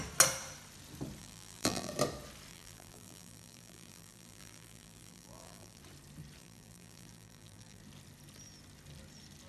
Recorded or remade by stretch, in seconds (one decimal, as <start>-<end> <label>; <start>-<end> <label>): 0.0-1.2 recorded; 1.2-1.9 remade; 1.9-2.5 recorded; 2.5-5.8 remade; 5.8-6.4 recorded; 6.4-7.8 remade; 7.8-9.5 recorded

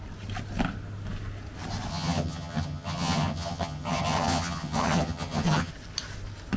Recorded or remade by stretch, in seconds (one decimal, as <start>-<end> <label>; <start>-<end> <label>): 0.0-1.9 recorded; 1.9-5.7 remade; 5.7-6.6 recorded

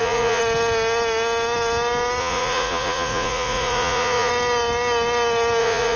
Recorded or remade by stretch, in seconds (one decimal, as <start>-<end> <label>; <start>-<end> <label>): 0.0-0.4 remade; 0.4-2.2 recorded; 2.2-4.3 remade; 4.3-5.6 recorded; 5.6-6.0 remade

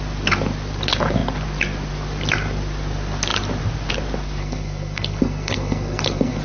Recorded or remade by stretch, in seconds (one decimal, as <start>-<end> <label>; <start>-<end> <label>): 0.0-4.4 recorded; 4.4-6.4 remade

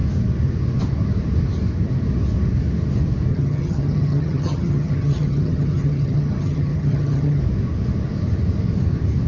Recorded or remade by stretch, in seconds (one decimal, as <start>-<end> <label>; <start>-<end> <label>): 0.0-3.3 recorded; 3.3-7.4 remade; 7.4-9.3 recorded

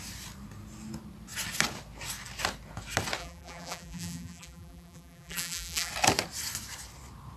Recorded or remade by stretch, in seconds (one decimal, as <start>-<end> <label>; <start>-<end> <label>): 0.0-3.2 recorded; 3.2-5.9 remade; 5.9-7.4 recorded

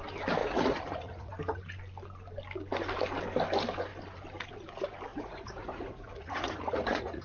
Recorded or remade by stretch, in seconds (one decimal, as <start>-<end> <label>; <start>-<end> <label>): 0.0-0.4 recorded; 0.4-1.3 remade; 1.3-5.1 recorded; 5.1-7.2 remade